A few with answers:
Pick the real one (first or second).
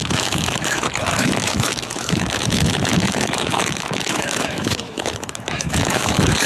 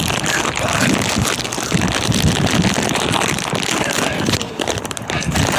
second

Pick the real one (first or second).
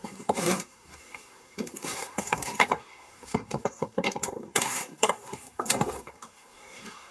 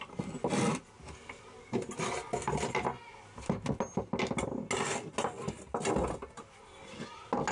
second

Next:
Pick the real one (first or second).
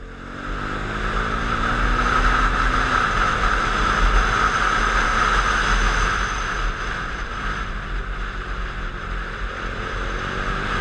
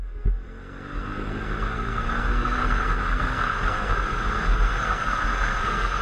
first